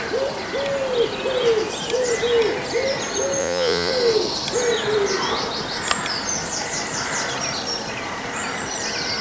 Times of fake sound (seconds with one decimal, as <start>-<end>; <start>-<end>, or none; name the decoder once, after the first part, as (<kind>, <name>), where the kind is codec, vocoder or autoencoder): 3.4-3.9 (vocoder, Vocos)